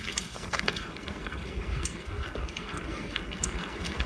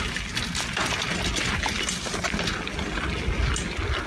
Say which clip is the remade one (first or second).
first